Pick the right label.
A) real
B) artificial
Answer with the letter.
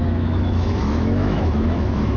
B